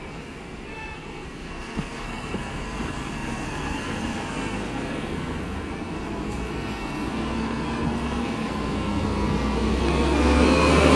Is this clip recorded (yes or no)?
no